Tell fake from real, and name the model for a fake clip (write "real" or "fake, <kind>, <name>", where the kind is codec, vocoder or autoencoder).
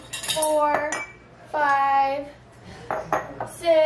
real